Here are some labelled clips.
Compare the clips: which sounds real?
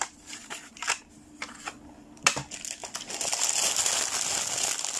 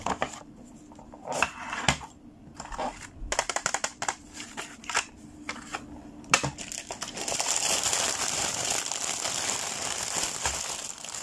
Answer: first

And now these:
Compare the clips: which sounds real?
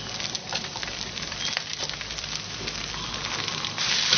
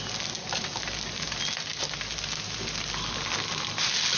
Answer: second